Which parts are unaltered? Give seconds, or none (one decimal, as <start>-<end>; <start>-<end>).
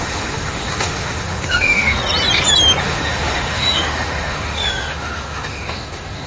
2.0-2.8